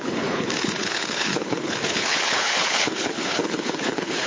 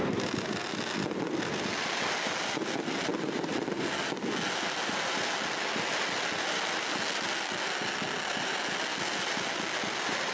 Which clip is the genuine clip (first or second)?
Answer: second